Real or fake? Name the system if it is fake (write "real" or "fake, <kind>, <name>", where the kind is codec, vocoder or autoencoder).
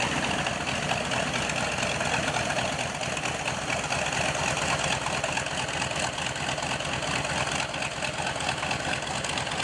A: real